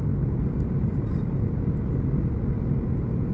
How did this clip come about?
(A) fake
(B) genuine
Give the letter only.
B